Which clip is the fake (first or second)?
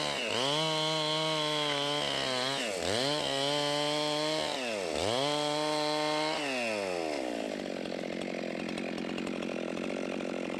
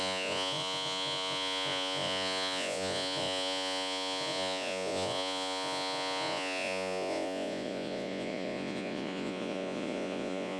second